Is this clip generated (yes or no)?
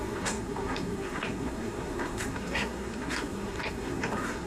yes